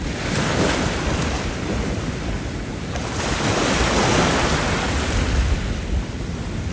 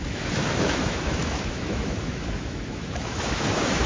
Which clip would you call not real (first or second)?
second